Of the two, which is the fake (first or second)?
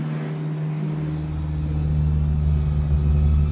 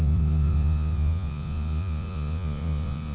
second